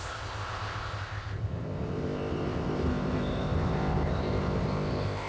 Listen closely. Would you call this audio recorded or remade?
remade